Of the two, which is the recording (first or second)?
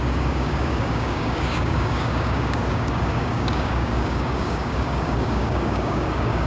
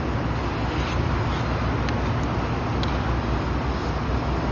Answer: second